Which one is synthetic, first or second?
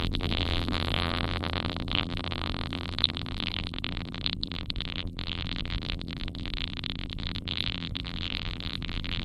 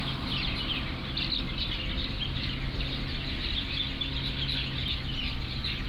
first